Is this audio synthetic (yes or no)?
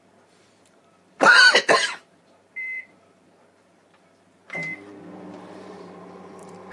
yes